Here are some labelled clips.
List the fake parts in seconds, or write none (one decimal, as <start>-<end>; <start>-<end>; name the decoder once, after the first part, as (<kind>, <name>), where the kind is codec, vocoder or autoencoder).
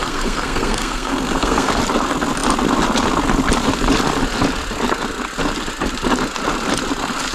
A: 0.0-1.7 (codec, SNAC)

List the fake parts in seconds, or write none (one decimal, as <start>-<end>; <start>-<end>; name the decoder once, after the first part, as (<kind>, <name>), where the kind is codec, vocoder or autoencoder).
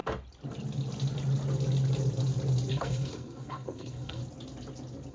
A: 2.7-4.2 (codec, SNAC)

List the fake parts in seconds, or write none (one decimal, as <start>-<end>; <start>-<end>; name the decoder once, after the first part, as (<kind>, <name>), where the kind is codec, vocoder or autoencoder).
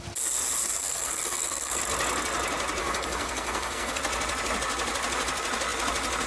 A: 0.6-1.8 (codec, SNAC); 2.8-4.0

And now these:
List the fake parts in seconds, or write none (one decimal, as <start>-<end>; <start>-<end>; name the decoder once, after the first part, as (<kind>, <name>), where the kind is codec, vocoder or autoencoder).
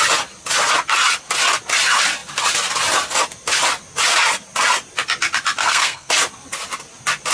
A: 5.6-6.1 (codec, SNAC)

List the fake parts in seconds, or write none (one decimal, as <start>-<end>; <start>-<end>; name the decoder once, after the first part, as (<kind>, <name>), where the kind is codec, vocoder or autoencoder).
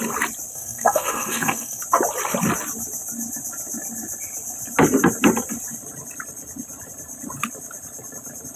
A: 0.5-1.8 (codec, SNAC)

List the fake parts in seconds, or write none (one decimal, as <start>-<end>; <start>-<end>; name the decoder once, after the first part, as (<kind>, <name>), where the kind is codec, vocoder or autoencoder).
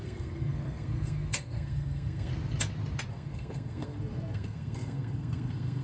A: 0.0-2.3 (codec, SNAC); 3.1-5.8